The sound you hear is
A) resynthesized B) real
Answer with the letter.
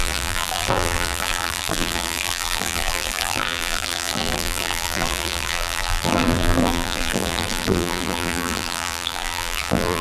A